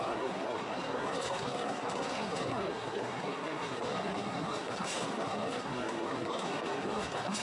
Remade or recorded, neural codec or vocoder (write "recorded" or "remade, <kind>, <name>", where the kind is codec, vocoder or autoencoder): remade, codec, SNAC